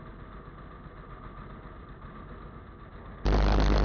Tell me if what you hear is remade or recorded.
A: recorded